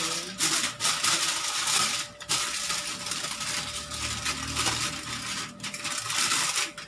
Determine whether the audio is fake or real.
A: real